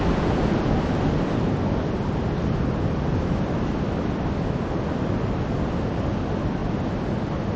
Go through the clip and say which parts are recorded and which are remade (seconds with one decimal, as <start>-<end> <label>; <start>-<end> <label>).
0.0-7.6 recorded